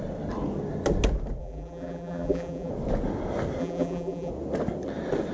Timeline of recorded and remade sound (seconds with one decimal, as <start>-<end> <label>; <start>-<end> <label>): 0.0-1.4 recorded; 1.4-2.7 remade; 2.7-3.6 recorded; 3.6-4.3 remade; 4.3-5.3 recorded